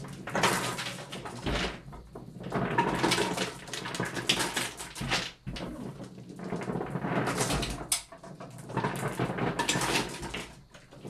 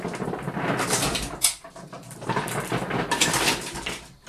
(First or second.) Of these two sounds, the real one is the first